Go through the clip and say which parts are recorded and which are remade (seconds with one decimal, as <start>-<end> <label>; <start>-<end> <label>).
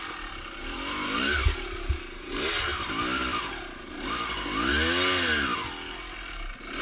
0.0-6.8 recorded